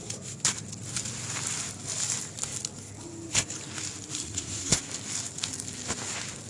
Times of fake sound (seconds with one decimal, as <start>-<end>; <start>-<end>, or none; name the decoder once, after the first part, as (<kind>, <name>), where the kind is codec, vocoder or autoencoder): 4.2-4.8 (codec, SNAC)